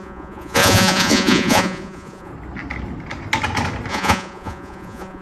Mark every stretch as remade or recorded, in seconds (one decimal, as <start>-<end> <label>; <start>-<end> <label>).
0.0-2.3 remade; 2.3-3.9 recorded; 3.9-5.2 remade